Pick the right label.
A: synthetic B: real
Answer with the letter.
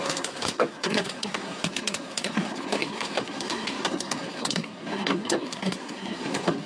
A